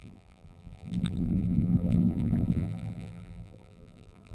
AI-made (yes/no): yes